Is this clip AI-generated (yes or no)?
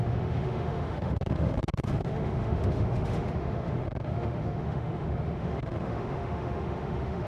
yes